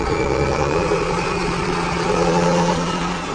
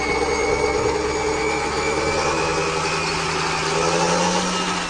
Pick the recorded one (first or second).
second